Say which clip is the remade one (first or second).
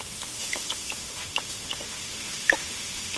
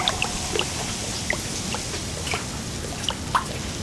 first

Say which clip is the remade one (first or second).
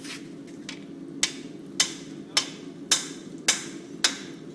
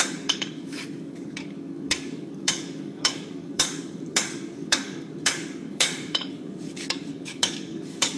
second